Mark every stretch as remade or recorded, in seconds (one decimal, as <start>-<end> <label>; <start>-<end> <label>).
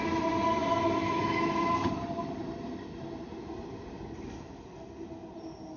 0.0-5.8 recorded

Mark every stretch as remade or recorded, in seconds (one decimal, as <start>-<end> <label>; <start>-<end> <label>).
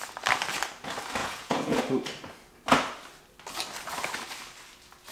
0.0-1.2 recorded; 1.2-1.8 remade; 1.8-5.1 recorded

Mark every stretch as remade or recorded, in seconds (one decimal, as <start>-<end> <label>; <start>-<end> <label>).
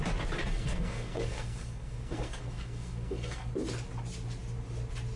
0.0-0.4 recorded; 0.4-3.5 remade; 3.5-5.2 recorded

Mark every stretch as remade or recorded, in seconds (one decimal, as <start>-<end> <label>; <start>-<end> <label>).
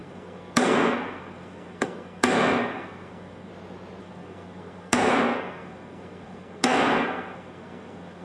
0.0-3.5 remade; 3.5-4.0 recorded; 4.0-8.2 remade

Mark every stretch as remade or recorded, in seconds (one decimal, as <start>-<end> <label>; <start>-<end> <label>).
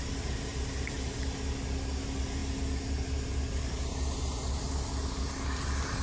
0.0-0.5 recorded; 0.5-1.2 remade; 1.2-6.0 recorded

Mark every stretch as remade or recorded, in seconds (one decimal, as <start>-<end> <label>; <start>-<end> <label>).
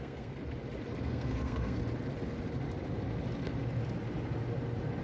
0.0-0.4 remade; 0.4-1.0 recorded; 1.0-1.8 remade; 1.8-5.0 recorded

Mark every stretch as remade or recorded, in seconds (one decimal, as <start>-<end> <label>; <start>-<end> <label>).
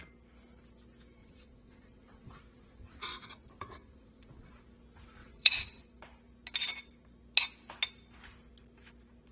0.0-1.2 recorded; 1.2-4.5 remade; 4.5-5.2 recorded; 5.2-5.8 remade; 5.8-9.3 recorded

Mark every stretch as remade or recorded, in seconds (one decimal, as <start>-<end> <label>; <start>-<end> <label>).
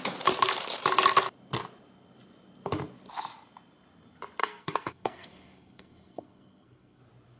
0.0-4.4 recorded; 4.4-7.0 remade; 7.0-7.4 recorded